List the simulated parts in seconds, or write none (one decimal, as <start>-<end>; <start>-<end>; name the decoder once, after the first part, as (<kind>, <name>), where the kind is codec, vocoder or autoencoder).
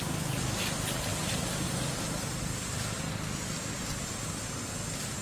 none